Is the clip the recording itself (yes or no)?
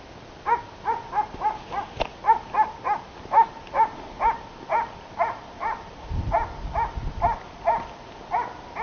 yes